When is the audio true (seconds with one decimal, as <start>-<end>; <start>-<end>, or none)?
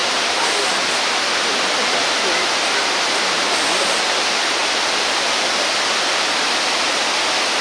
0.8-7.6